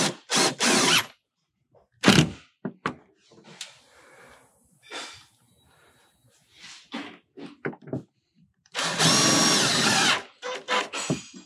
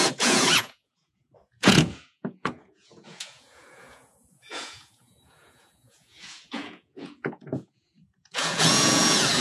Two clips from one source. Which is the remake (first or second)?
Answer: second